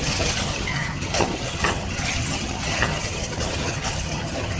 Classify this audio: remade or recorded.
remade